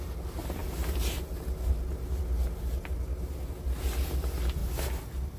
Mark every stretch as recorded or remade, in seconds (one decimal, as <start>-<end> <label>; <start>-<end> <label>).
0.0-5.4 recorded